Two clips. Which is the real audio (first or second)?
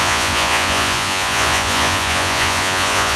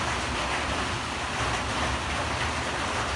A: second